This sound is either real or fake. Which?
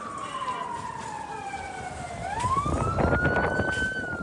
real